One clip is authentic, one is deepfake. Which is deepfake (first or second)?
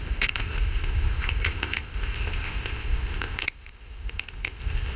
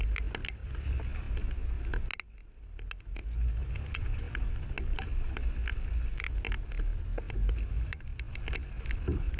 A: first